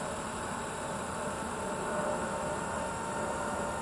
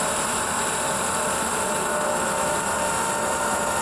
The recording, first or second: second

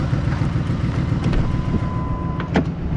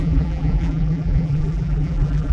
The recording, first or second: first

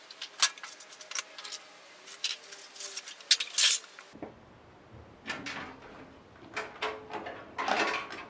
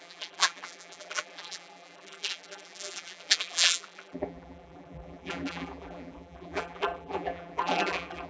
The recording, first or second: first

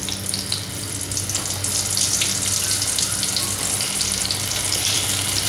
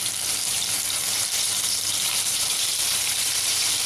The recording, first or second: first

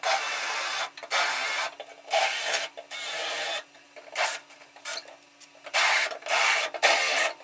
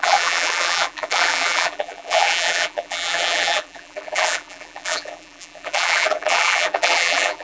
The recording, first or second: first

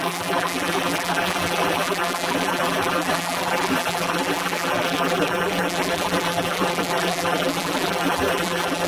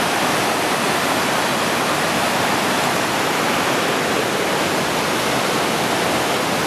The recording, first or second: second